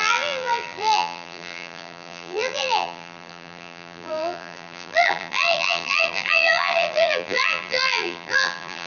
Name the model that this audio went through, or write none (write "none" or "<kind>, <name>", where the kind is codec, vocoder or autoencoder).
vocoder, BigVGAN v2